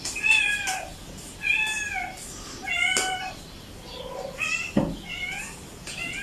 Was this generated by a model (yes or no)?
no